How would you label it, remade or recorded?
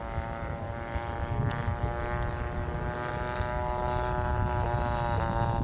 recorded